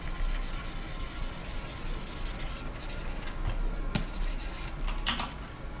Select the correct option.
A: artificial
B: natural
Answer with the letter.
B